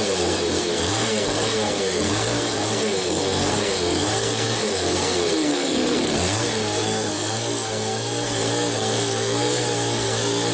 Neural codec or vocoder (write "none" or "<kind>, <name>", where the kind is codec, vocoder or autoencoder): codec, SNAC